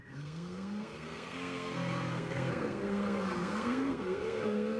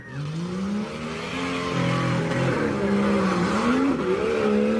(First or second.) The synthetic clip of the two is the first